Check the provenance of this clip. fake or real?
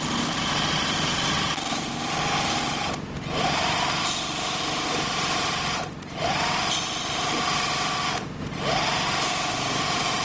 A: real